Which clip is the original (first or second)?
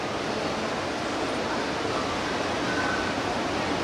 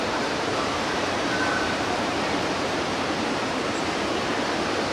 first